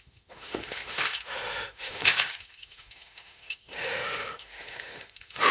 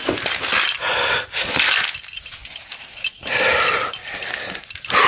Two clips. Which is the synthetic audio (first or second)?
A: first